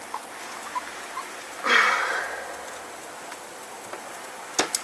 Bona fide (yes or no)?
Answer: yes